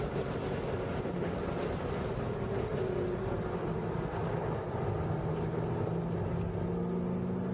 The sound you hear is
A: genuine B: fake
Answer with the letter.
A